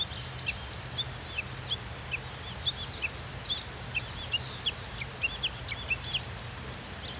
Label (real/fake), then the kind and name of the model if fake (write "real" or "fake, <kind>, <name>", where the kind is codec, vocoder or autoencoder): real